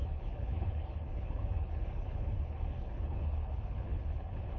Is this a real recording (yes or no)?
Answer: no